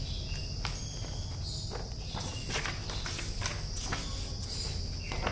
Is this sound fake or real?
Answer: real